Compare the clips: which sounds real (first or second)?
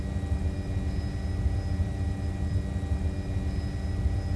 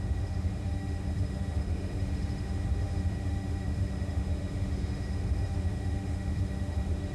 first